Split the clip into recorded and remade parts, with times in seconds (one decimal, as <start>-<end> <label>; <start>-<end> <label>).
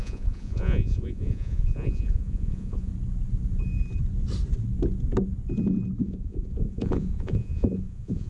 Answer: 0.0-2.9 remade; 2.9-6.0 recorded; 6.0-8.3 remade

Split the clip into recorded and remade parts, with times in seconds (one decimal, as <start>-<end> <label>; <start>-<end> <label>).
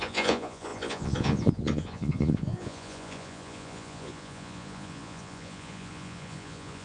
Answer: 0.0-6.8 remade